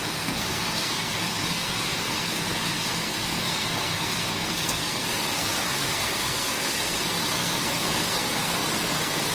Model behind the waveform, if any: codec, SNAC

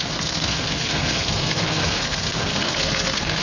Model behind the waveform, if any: codec, SNAC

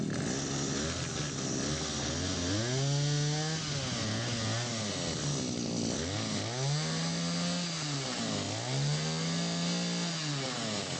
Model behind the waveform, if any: none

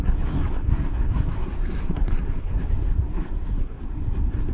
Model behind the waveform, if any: codec, SNAC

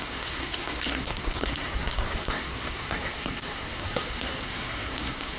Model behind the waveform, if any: codec, SNAC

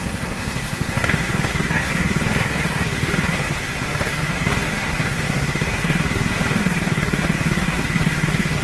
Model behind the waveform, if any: codec, SNAC